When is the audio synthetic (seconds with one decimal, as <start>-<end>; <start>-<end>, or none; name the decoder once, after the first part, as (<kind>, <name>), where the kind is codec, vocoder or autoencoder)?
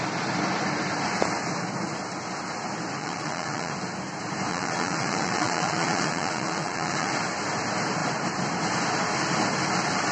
3.0-3.7 (vocoder, Vocos); 4.5-7.1